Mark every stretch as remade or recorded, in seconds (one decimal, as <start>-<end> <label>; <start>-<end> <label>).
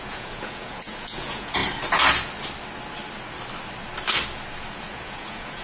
0.0-1.6 remade; 1.6-4.8 recorded; 4.8-5.6 remade